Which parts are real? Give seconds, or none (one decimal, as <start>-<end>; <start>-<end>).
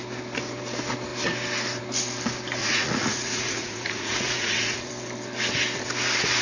0.0-2.6; 4.9-6.4